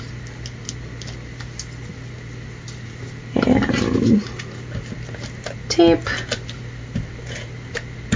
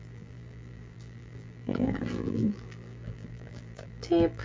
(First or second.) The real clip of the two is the first